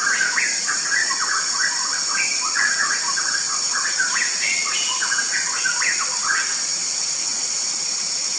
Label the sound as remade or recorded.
remade